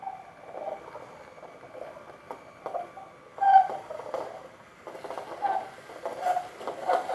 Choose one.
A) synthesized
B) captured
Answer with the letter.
B